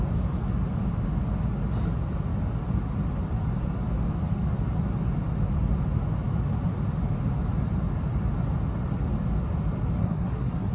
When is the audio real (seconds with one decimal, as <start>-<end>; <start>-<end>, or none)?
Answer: 0.0-10.0